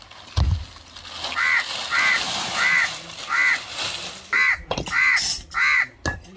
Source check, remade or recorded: recorded